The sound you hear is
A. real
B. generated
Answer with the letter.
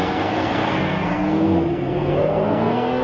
B